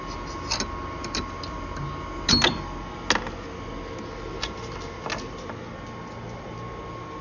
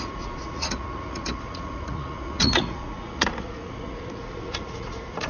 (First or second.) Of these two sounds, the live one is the first